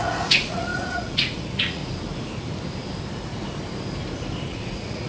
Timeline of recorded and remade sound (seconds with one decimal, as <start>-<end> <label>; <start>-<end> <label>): 0.0-1.8 remade; 1.8-4.5 recorded; 4.5-5.1 remade